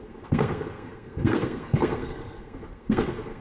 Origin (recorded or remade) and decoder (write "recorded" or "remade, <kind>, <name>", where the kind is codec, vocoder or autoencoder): remade, codec, SNAC